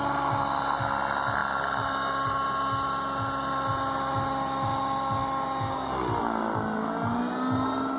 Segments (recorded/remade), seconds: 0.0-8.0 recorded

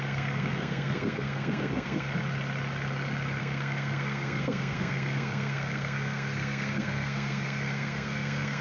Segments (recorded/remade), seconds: 0.0-2.2 remade; 2.2-3.4 recorded; 3.4-8.6 remade

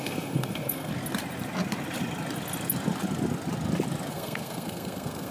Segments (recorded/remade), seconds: 0.0-0.9 remade; 0.9-4.1 recorded; 4.1-5.3 remade